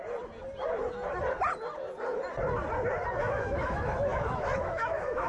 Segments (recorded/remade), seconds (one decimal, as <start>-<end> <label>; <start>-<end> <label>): 0.0-3.2 recorded; 3.2-5.3 remade